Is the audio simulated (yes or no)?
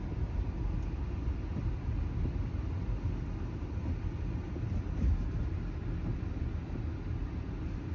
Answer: no